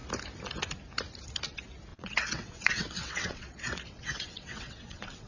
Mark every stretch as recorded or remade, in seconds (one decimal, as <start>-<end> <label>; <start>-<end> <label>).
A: 0.0-1.9 recorded; 1.9-5.3 remade